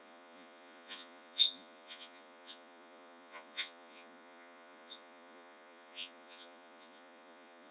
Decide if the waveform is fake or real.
fake